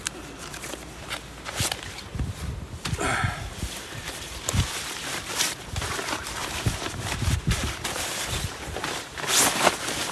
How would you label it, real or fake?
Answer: fake